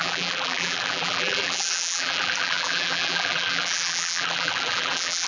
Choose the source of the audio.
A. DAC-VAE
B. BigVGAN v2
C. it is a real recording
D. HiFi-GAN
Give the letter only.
B